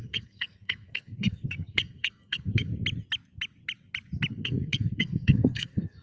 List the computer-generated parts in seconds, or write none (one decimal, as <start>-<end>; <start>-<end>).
0.0-2.7; 4.3-6.0